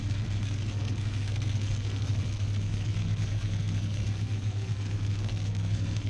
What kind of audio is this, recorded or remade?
remade